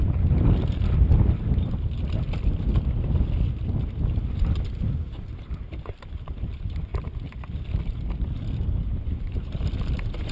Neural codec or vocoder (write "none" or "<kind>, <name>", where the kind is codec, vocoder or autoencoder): vocoder, BigVGAN v2